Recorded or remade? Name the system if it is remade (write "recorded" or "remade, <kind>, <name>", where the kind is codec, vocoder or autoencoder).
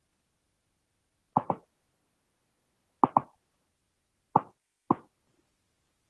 recorded